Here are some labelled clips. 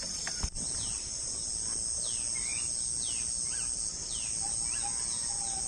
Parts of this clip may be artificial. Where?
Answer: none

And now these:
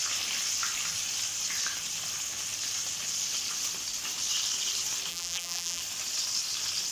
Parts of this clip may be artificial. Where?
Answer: 5.1-5.8 (vocoder, BigVGAN v2)